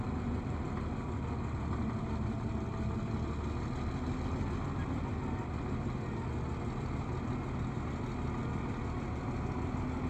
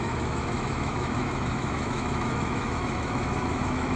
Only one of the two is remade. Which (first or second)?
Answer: second